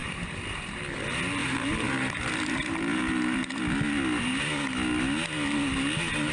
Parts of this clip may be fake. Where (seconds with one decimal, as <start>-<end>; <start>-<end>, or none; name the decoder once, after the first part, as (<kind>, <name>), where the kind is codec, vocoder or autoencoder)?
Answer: 0.0-0.8 (vocoder, BigVGAN v2); 1.4-3.6